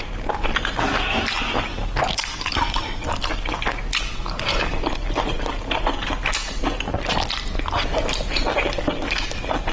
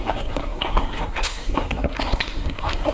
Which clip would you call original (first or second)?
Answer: first